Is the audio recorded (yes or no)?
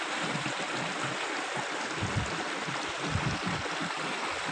yes